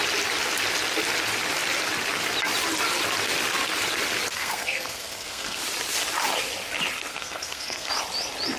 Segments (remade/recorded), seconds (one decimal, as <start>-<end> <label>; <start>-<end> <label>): 0.0-4.4 recorded; 4.4-5.6 remade; 5.6-7.1 recorded; 7.1-7.9 remade; 7.9-8.6 recorded